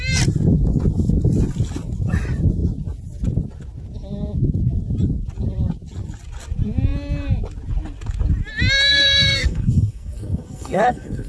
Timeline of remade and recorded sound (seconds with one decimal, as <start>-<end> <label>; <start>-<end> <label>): 0.0-8.9 recorded; 8.9-11.3 remade